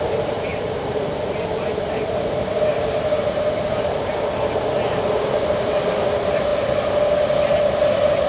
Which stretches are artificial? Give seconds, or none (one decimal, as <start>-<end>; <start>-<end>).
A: 0.5-4.7